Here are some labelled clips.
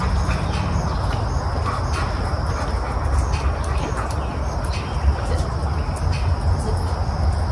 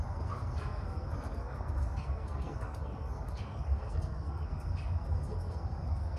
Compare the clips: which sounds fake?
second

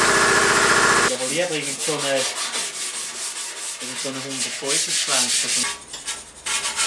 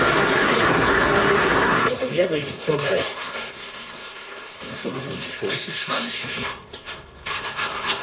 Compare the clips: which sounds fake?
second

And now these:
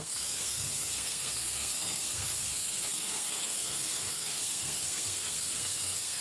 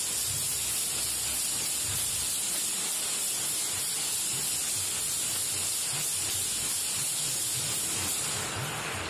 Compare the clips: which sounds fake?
first